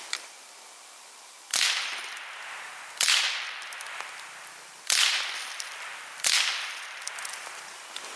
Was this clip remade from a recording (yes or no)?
yes